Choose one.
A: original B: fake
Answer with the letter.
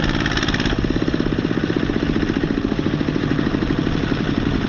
A